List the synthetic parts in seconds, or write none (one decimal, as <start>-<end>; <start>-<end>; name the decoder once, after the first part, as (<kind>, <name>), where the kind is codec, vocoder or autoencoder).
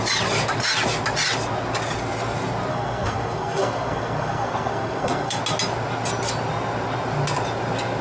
2.7-5.4 (codec, SNAC)